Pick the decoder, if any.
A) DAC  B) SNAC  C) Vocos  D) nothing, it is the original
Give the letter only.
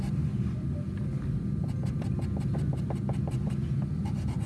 D